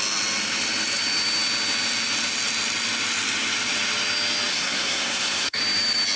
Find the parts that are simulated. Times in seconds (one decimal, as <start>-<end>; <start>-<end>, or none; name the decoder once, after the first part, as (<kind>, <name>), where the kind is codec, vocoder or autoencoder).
4.5-5.6 (codec, SNAC)